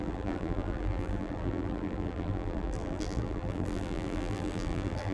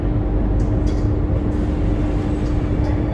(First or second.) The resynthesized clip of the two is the first